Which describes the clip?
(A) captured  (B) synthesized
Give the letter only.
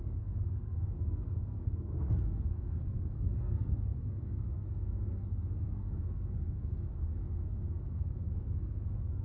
B